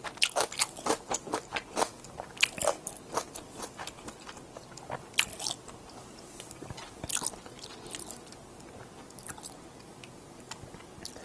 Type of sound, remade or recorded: recorded